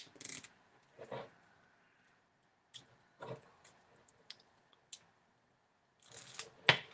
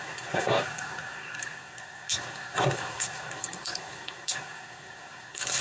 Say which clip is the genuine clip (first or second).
first